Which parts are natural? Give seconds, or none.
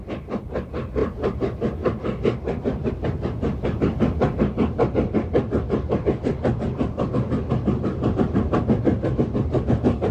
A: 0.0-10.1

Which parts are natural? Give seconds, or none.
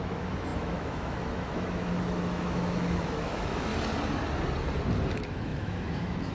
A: 3.7-5.1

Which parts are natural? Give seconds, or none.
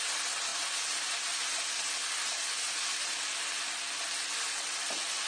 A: 0.5-3.7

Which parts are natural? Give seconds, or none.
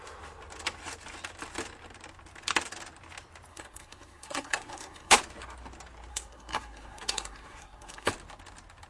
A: 0.0-3.5; 5.2-6.1; 8.1-8.9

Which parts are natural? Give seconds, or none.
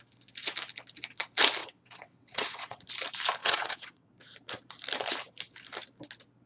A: 0.0-1.6; 2.8-3.4; 4.1-6.5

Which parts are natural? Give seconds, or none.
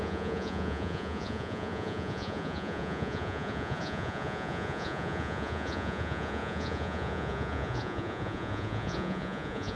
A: none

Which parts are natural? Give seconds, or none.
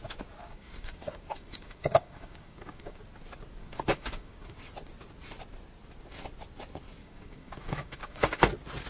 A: 0.0-0.4; 3.0-3.6; 4.6-7.0; 8.4-8.9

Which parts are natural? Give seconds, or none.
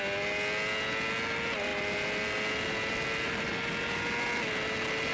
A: 0.0-5.1